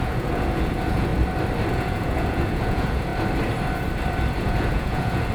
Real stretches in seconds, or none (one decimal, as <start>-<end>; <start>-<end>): 1.1-1.7; 3.1-4.3